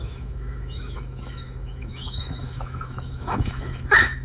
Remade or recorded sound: remade